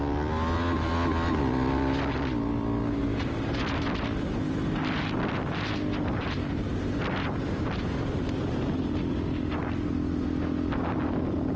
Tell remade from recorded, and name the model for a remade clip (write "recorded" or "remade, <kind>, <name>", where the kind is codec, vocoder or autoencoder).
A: recorded